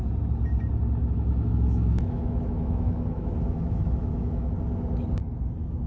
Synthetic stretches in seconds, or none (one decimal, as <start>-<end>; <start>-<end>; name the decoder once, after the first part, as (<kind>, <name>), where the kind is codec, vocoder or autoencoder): 1.0-4.5 (autoencoder, DAC-VAE)